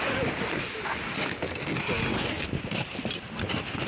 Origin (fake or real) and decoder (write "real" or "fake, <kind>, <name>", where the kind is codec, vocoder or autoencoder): real